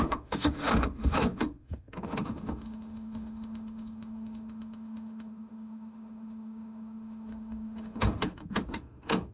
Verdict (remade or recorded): remade